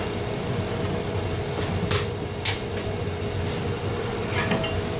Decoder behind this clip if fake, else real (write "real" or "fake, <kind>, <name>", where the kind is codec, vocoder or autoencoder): real